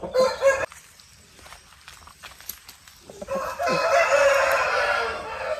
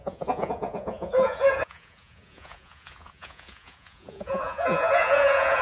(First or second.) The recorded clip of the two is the first